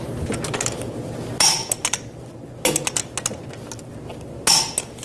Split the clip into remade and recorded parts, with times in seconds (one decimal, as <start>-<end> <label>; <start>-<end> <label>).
0.0-5.0 recorded